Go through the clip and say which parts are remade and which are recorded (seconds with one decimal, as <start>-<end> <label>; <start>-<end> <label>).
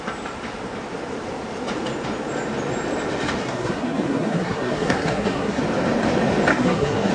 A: 0.0-3.4 recorded; 3.4-5.6 remade; 5.6-6.5 recorded; 6.5-7.1 remade